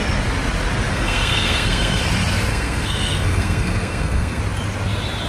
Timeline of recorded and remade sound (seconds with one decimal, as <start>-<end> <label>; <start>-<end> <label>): 0.0-0.9 recorded; 0.9-2.0 remade; 2.0-2.5 recorded; 2.5-4.4 remade; 4.4-5.3 recorded